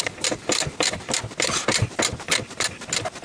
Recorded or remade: recorded